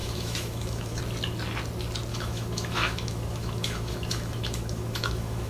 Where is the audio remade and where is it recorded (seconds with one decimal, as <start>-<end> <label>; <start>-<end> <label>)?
0.0-1.0 remade; 1.0-2.1 recorded; 2.1-5.5 remade